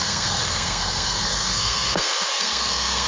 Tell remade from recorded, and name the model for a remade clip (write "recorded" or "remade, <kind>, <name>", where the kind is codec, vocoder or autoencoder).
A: remade, codec, SNAC